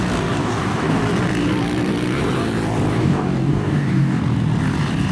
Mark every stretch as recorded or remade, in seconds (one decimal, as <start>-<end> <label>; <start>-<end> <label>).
0.0-0.4 recorded; 0.4-1.0 remade; 1.0-2.9 recorded; 2.9-4.2 remade; 4.2-5.1 recorded